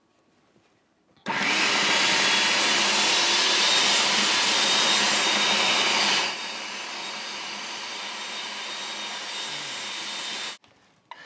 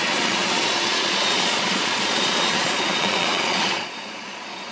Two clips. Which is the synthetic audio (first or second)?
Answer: second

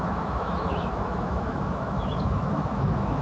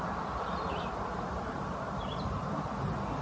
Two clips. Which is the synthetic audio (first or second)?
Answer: first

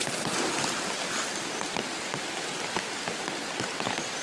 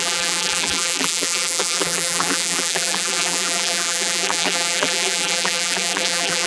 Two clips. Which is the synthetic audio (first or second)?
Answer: second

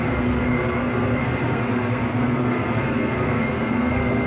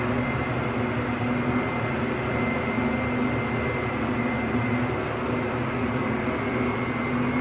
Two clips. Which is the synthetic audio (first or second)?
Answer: first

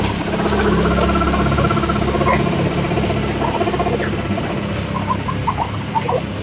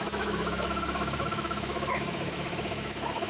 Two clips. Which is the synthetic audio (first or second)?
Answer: second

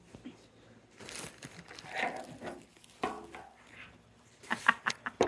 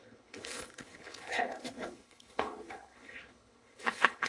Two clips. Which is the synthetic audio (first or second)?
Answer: second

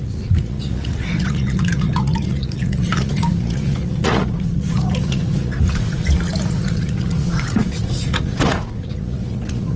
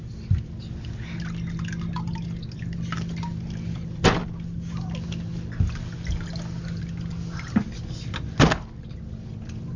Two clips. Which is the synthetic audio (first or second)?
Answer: first